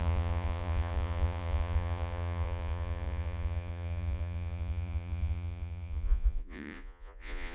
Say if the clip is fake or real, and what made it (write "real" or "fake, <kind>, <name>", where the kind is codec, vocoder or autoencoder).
fake, vocoder, Vocos